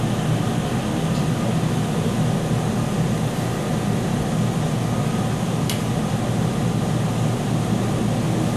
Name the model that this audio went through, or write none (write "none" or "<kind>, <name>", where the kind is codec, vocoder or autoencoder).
none